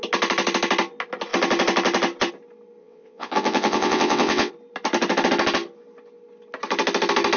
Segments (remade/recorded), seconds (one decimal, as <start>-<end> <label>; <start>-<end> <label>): 0.0-2.8 recorded; 2.8-4.5 remade; 4.5-7.4 recorded